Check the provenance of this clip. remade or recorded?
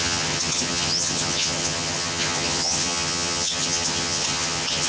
remade